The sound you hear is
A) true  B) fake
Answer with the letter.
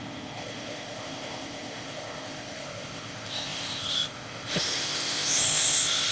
B